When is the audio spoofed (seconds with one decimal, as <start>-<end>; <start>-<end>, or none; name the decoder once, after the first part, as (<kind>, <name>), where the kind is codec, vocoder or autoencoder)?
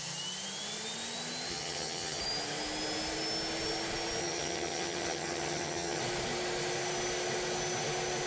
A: 1.5-2.2 (vocoder, HiFi-GAN); 4.2-6.0